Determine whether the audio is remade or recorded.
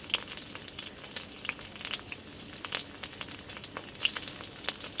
recorded